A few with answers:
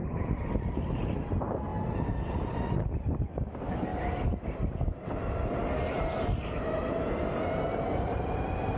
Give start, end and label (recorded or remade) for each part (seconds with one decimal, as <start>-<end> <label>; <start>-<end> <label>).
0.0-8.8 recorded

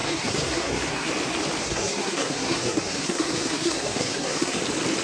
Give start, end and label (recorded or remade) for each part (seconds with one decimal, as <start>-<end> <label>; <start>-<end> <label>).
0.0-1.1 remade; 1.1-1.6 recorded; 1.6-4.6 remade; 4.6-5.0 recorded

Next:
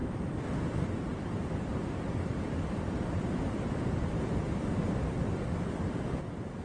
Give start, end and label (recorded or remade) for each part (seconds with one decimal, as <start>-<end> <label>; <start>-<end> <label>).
0.0-0.5 remade; 0.5-1.1 recorded; 1.1-5.1 remade; 5.1-6.6 recorded